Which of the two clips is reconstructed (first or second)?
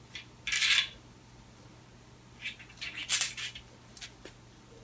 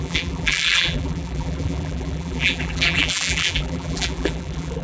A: second